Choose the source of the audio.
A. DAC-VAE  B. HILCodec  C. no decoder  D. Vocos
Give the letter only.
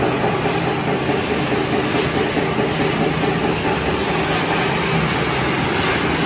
C